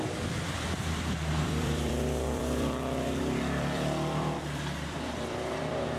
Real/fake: fake